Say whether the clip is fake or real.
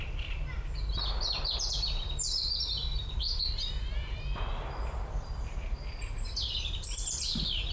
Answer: fake